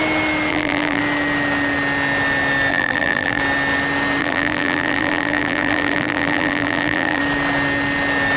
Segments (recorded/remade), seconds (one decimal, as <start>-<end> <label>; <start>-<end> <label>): 0.0-0.5 recorded; 0.5-1.0 remade; 1.0-2.7 recorded; 2.7-3.4 remade; 3.4-4.2 recorded; 4.2-7.2 remade; 7.2-8.4 recorded